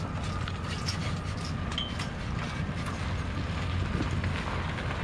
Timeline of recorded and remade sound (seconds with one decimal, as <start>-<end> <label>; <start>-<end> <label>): 0.0-5.0 recorded

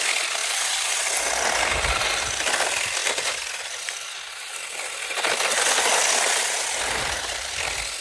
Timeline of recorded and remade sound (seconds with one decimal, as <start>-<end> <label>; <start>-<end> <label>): 0.0-0.4 recorded; 0.4-1.0 remade; 1.0-8.0 recorded

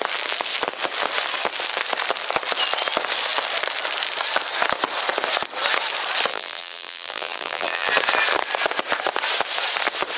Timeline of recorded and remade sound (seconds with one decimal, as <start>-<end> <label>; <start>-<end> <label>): 0.0-6.3 recorded; 6.3-7.9 remade; 7.9-10.2 recorded

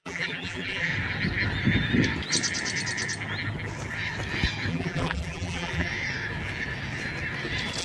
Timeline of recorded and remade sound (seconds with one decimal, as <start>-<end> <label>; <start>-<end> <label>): 0.0-0.9 remade; 0.9-4.7 recorded; 4.7-5.9 remade; 5.9-7.8 recorded

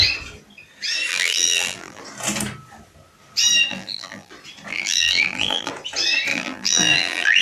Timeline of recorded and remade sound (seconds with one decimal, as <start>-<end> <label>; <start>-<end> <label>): 0.0-1.1 recorded; 1.1-2.0 remade; 2.0-3.7 recorded; 3.7-4.3 remade; 4.3-4.7 recorded; 4.7-5.7 remade; 5.7-6.3 recorded; 6.3-7.4 remade

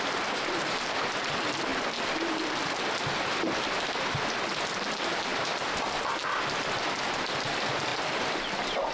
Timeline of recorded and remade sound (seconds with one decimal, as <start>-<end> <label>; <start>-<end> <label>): 0.0-1.7 recorded; 1.7-2.7 remade; 2.7-7.9 recorded; 7.9-8.5 remade; 8.5-8.9 recorded

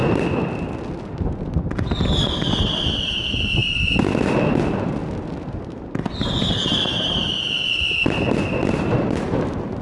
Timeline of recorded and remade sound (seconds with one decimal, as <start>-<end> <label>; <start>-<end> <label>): 0.0-3.1 recorded; 3.1-3.6 remade; 3.6-8.7 recorded; 8.7-9.8 remade

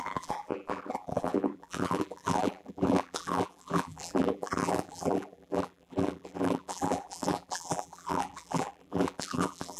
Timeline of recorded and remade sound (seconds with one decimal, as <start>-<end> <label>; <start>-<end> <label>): 0.0-9.8 remade